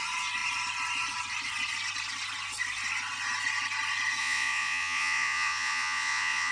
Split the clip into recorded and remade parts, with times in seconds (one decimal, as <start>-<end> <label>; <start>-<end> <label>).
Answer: 0.0-4.2 recorded; 4.2-6.5 remade